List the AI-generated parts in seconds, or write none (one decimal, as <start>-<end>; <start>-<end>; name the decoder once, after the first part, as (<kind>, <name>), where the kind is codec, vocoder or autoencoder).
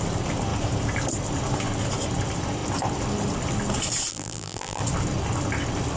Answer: 4.1-4.8 (vocoder, BigVGAN v2)